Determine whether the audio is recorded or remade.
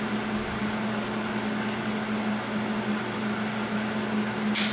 recorded